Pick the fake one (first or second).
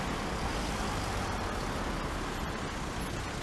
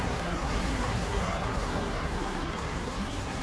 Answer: second